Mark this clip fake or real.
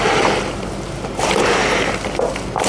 real